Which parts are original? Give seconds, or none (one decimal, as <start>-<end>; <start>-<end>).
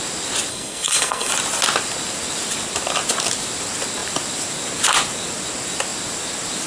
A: 0.0-0.5; 1.3-6.7